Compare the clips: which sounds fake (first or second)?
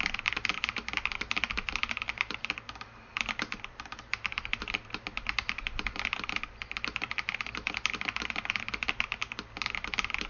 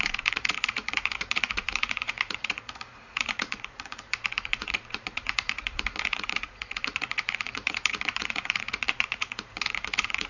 second